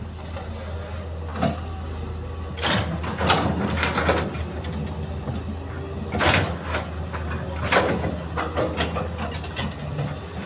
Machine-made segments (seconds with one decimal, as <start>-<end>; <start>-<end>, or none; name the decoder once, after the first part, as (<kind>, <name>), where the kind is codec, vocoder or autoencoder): none